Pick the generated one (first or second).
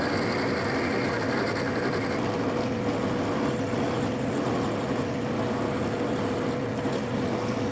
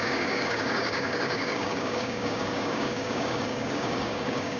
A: second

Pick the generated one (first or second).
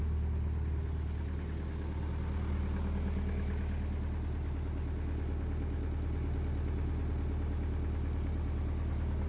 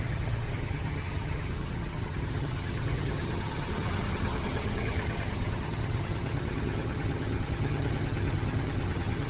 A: second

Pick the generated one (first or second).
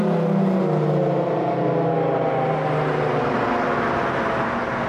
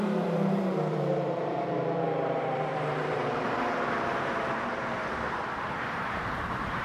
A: second